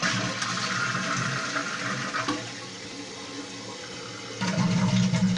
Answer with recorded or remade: recorded